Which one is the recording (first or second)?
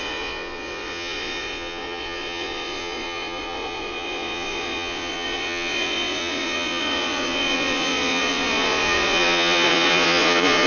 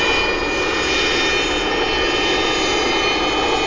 second